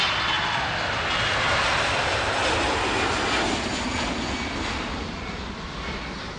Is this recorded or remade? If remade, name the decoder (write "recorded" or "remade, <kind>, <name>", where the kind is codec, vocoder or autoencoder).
recorded